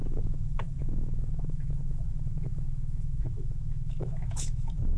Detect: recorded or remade remade